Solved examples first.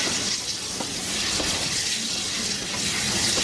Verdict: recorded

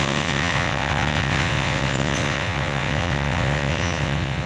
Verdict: remade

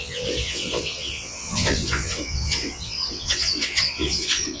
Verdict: remade